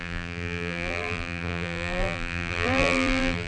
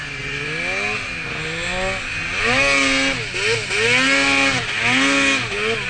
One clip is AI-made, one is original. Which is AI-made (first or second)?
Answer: first